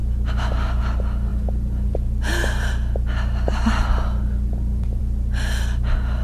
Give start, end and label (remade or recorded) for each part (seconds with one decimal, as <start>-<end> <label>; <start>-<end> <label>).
0.0-6.2 recorded